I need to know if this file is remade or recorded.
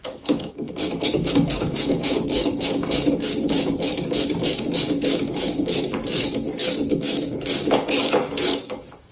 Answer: remade